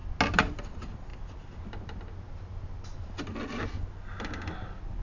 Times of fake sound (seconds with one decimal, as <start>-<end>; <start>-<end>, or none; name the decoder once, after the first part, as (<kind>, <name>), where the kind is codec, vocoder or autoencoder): none